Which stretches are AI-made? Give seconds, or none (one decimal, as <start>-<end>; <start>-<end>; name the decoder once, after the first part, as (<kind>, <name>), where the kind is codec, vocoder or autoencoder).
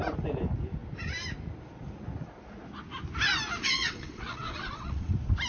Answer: 3.6-5.1 (vocoder, WaveNeXt)